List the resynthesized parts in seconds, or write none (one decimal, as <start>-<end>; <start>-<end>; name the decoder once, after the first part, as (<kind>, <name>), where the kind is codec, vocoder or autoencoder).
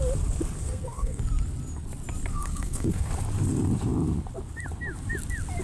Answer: 0.6-1.2 (codec, SNAC); 2.3-3.1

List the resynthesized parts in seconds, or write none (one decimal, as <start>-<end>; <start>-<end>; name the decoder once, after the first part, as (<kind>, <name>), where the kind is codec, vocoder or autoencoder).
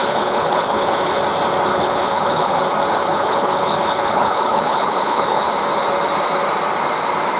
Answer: 0.0-1.2 (codec, HILCodec); 1.7-2.6; 3.0-5.5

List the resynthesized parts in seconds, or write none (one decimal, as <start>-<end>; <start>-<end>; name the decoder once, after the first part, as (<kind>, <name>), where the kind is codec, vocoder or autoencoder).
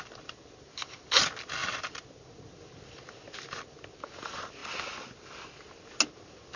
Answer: none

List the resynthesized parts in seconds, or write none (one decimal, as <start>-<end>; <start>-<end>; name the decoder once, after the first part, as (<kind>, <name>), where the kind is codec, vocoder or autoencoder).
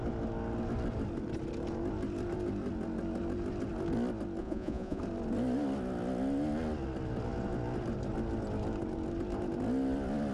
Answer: 4.4-5.0 (vocoder, Vocos)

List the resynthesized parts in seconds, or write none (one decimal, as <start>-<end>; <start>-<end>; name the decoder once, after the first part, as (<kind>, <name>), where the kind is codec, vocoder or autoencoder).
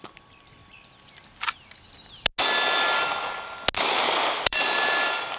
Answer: 0.0-0.6 (vocoder, BigVGAN v2); 3.8-5.4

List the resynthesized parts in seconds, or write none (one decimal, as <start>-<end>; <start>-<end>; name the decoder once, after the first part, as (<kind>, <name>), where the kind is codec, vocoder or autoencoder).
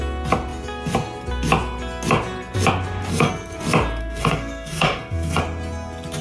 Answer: 3.1-3.6 (codec, SNAC); 4.0-5.4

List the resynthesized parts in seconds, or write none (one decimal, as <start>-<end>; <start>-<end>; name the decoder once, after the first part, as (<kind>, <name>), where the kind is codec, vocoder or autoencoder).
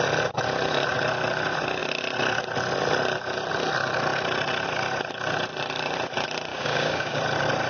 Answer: 6.5-7.2 (codec, DAC)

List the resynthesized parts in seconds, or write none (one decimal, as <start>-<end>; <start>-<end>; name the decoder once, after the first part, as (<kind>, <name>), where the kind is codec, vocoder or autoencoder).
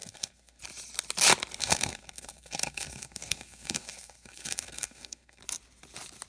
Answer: 0.0-0.6 (codec, SNAC); 1.6-5.4